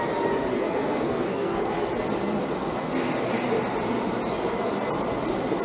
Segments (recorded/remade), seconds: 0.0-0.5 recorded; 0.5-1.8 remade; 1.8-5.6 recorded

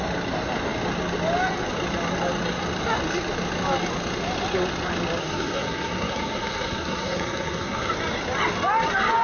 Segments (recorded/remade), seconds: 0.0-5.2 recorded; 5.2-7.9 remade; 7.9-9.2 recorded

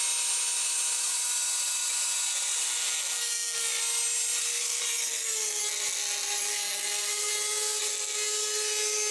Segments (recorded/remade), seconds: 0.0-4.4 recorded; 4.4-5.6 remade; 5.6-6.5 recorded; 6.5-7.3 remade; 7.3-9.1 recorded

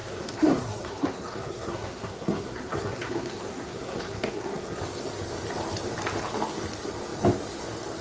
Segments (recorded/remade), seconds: 0.0-4.8 remade; 4.8-8.0 recorded